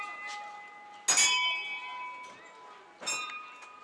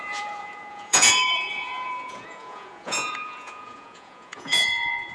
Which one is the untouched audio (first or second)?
first